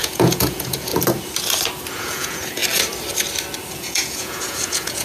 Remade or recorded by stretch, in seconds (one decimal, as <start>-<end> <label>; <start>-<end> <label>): 0.0-0.9 remade; 0.9-2.0 recorded; 2.0-2.6 remade; 2.6-3.7 recorded; 3.7-5.0 remade